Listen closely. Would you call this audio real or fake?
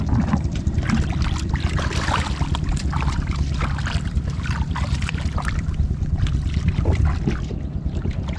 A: real